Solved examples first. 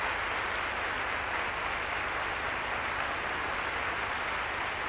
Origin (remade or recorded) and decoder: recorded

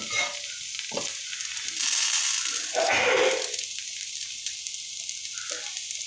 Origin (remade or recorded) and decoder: recorded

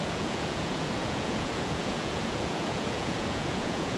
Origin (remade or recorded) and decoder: remade, vocoder, Vocos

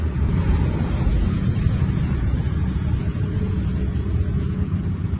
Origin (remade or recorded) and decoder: remade, vocoder, Vocos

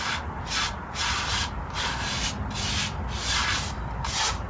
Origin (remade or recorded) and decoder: recorded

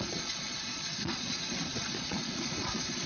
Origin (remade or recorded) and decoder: remade, vocoder, Vocos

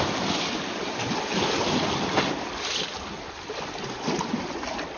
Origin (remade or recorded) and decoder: recorded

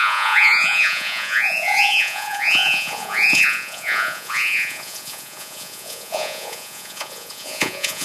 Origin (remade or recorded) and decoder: remade, vocoder, Vocos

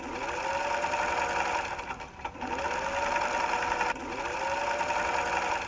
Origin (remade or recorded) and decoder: recorded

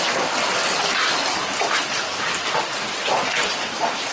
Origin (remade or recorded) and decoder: recorded